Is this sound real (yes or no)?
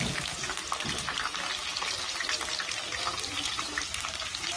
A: yes